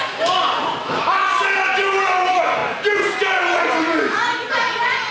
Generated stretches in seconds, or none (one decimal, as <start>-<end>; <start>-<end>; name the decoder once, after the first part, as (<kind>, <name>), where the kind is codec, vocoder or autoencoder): none